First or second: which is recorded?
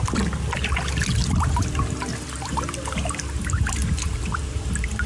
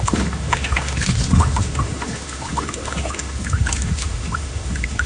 first